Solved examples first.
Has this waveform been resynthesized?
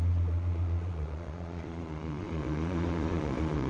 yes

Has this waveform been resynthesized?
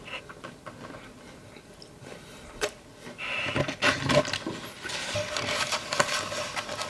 no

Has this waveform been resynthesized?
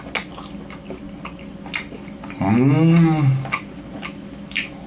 no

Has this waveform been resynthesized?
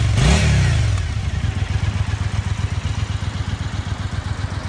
no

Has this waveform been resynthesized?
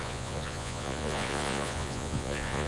yes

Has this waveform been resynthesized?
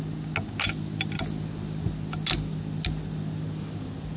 no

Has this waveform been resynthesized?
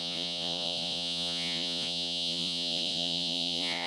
yes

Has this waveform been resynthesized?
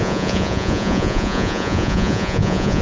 yes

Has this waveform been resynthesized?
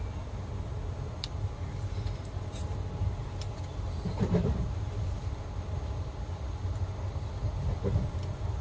no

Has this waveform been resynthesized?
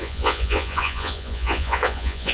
yes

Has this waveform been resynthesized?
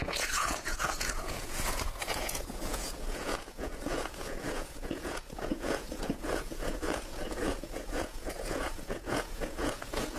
yes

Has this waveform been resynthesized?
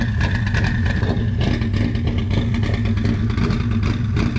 no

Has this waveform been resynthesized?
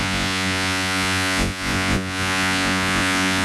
yes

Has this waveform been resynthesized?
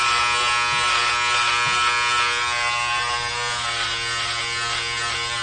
no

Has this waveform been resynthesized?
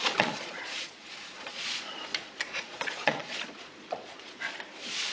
yes